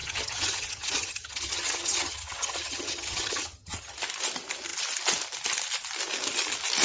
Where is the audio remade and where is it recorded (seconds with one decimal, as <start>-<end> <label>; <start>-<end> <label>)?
0.0-4.0 remade; 4.0-6.8 recorded